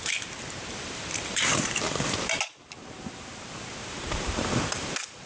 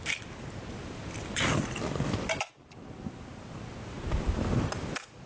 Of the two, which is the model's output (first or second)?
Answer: first